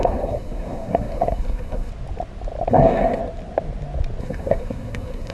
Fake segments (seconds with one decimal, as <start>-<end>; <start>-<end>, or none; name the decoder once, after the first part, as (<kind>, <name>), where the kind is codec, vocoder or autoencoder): 0.0-1.9 (codec, SNAC); 2.7-3.2; 4.2-5.3